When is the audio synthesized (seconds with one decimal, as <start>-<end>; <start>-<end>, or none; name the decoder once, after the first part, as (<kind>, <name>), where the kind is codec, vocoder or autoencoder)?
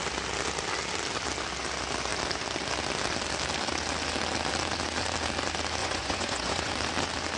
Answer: 5.8-6.7 (vocoder, Vocos)